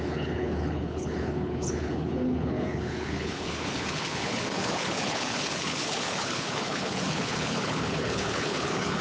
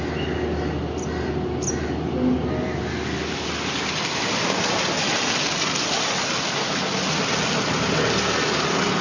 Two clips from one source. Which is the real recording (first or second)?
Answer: second